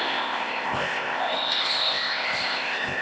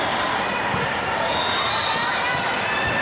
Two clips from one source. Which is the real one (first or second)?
second